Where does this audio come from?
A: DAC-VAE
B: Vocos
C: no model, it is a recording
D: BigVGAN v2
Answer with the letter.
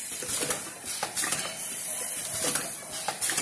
C